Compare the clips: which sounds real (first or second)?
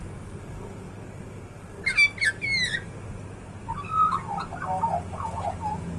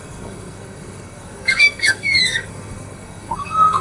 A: first